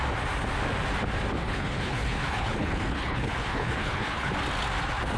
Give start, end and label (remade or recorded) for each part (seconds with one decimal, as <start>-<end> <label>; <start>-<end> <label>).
0.0-1.4 recorded; 1.4-4.3 remade; 4.3-5.2 recorded